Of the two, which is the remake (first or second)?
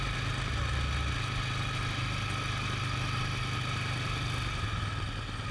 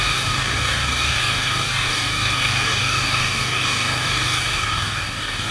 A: second